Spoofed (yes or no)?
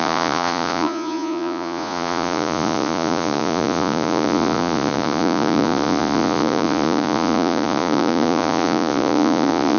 yes